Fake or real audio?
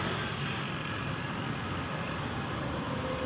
real